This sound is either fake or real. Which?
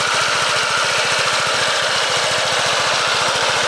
real